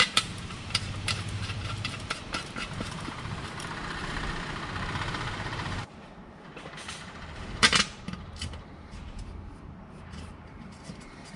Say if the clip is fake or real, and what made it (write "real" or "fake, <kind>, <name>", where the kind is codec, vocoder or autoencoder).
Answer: fake, vocoder, BigVGAN v2